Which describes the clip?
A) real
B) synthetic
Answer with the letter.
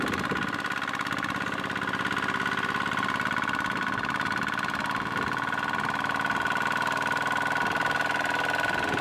A